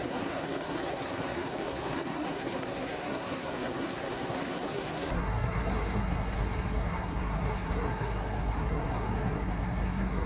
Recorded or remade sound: remade